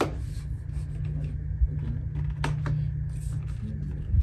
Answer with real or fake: real